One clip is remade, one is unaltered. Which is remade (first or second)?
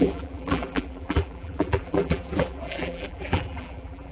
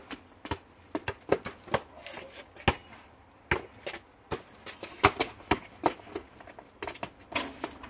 first